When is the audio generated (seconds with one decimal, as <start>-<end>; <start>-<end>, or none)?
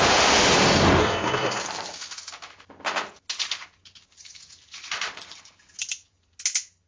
1.0-1.6